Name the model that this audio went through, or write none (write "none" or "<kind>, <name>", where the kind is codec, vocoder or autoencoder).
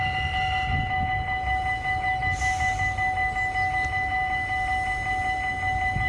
none